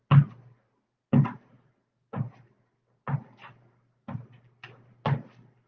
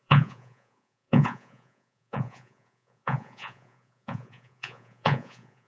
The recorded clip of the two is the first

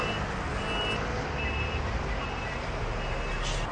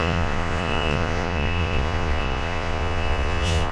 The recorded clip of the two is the first